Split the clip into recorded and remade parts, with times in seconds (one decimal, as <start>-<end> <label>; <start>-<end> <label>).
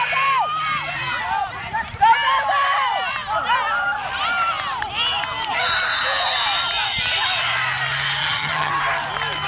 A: 0.0-8.2 recorded; 8.2-8.7 remade; 8.7-9.5 recorded